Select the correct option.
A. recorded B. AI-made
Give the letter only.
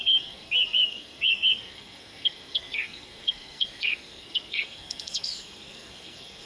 B